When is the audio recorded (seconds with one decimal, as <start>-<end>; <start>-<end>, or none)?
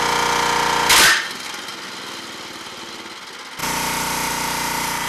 0.0-1.7; 3.2-5.1